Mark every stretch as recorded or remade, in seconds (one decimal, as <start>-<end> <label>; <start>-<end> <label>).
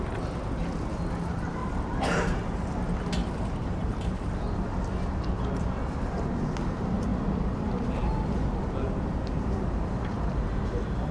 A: 0.0-1.6 recorded; 1.6-2.7 remade; 2.7-3.2 recorded; 3.2-4.2 remade; 4.2-11.1 recorded